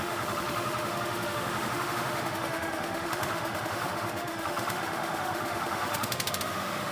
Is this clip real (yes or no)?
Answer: no